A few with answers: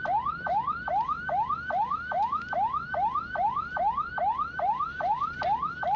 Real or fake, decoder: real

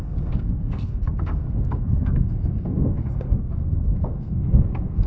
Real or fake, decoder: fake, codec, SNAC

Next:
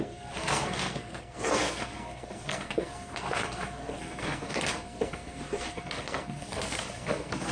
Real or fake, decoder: fake, codec, SNAC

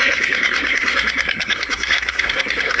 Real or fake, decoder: fake, codec, SNAC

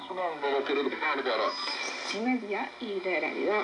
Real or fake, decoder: real